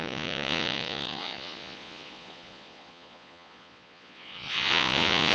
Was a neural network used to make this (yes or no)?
yes